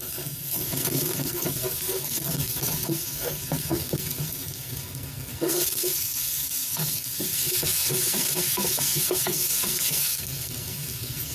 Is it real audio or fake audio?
fake